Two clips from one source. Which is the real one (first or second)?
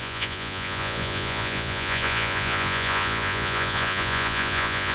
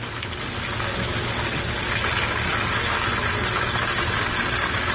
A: second